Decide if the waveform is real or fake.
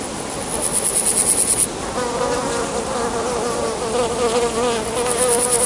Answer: real